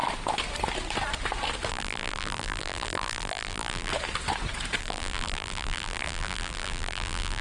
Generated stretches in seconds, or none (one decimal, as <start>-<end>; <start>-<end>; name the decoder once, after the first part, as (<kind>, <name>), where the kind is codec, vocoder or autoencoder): 1.7-3.9 (vocoder, BigVGAN v2); 4.8-7.4